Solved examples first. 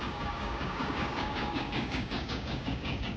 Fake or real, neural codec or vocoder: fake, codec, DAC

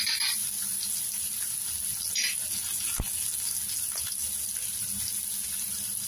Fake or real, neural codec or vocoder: real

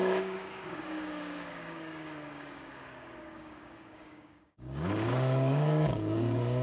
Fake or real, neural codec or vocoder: fake, codec, DAC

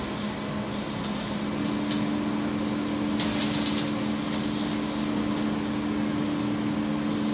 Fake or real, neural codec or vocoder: real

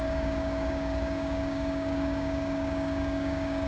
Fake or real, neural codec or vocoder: fake, codec, DAC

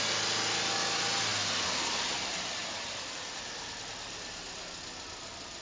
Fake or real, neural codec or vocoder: real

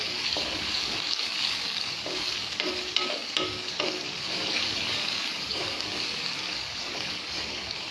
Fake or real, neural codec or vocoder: fake, codec, DAC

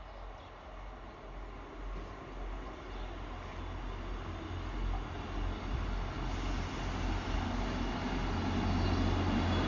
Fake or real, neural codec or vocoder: real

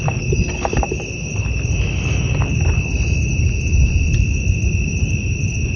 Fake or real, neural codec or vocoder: real